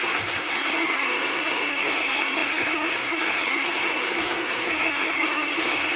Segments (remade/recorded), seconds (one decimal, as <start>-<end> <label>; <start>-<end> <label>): 0.0-6.0 remade